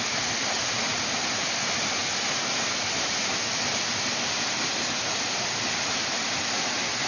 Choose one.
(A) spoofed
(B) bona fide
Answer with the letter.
B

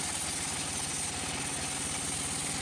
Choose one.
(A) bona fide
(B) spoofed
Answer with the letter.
A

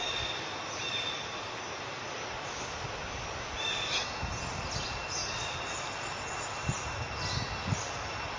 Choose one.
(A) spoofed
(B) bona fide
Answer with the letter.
B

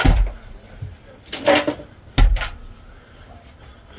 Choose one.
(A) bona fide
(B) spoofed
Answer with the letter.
A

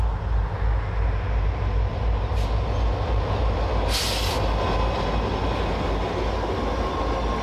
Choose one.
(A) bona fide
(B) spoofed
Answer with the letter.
A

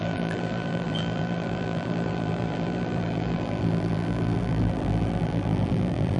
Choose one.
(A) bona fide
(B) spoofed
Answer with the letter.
B